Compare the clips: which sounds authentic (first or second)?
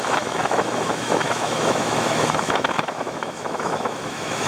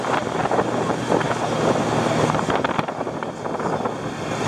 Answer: second